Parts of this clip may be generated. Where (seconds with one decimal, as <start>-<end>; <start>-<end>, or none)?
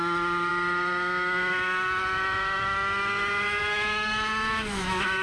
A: 0.0-5.2